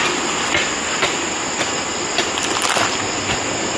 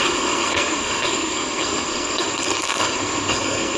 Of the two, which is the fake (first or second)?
second